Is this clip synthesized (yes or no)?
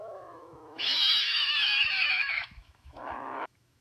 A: yes